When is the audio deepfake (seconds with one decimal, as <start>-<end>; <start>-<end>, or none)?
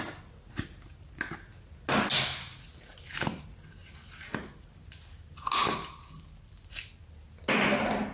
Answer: none